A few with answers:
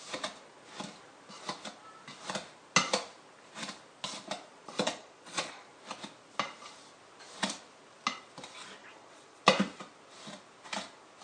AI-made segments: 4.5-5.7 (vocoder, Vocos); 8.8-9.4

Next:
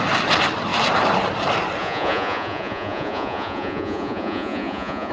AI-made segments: 1.8-5.1 (vocoder, Vocos)

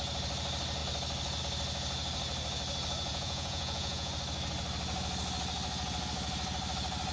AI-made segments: 3.1-4.1 (vocoder, Vocos)

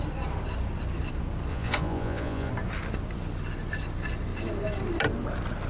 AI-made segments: 1.5-2.5 (vocoder, Vocos)

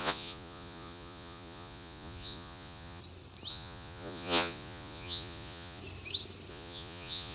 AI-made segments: 0.0-3.0 (vocoder, Vocos); 3.5-5.8; 6.5-7.3

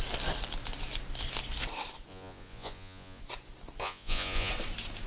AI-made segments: 2.1-3.2 (vocoder, Vocos); 3.8-4.5

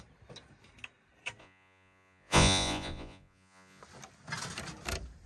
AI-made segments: 1.4-3.8 (vocoder, Vocos)

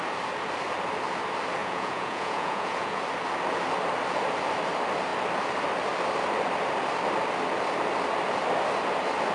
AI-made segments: 1.6-3.0 (vocoder, Vocos)